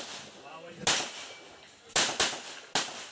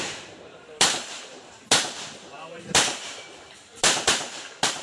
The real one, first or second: first